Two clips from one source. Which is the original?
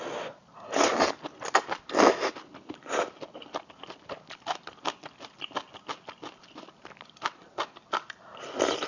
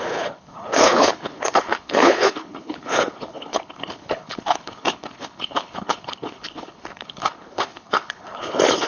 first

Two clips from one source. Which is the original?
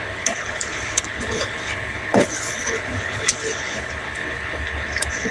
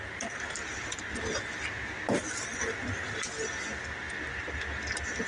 second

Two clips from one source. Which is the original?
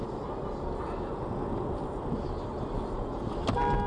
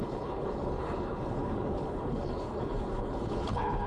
first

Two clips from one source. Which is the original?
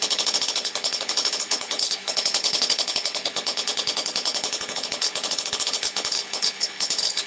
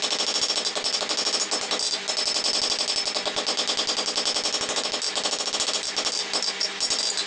second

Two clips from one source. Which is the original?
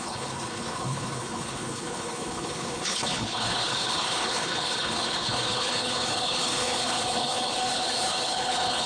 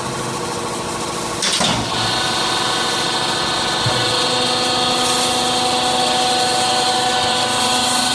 second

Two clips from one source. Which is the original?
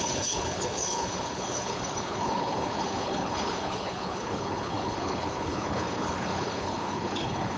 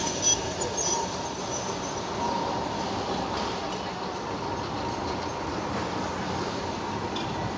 second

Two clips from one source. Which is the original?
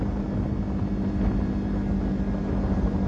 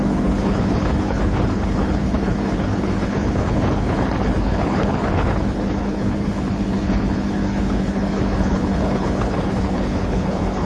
first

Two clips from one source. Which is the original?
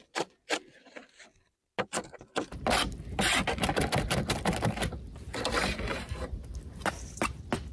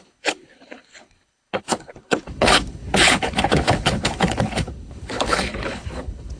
first